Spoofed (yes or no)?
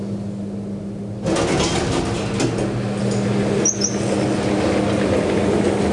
no